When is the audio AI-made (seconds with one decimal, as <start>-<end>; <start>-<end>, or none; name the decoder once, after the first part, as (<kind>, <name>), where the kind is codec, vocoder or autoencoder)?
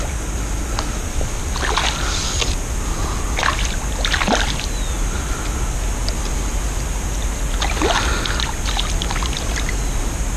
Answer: none